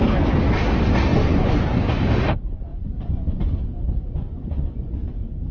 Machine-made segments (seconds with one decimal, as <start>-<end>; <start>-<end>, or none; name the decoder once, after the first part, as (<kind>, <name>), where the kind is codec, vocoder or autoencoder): 1.1-2.1 (vocoder, Vocos); 2.7-3.4; 4.3-5.1